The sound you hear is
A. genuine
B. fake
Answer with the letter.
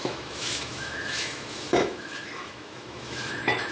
B